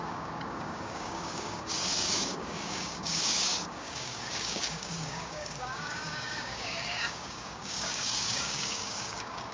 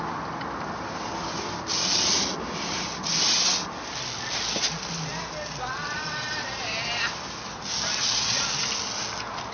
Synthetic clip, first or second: first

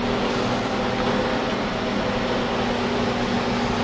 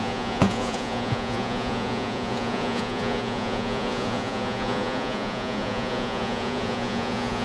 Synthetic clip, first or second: second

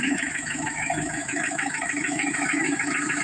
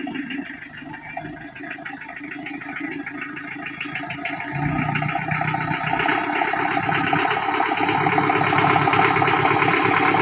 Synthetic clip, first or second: first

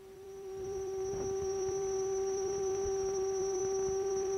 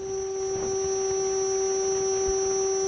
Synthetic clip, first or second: first